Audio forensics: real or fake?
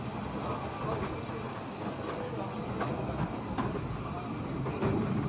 real